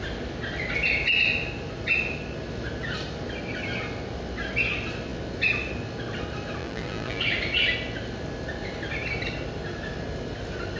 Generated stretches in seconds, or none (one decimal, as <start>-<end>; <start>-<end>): 6.6-7.2